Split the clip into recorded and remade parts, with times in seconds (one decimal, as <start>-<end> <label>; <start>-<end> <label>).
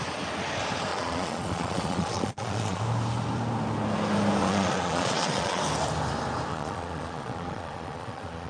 0.0-0.9 recorded; 0.9-2.8 remade; 2.8-4.4 recorded; 4.4-5.6 remade; 5.6-6.5 recorded; 6.5-8.5 remade